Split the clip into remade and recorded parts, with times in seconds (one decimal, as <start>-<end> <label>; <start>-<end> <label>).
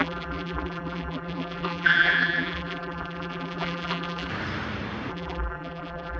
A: 0.0-4.3 remade; 4.3-5.1 recorded; 5.1-6.2 remade